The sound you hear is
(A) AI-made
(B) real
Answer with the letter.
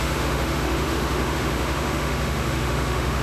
A